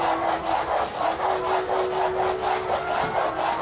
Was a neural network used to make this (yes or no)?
no